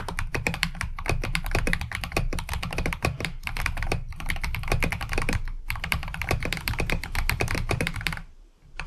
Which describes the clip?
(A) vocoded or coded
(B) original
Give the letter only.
A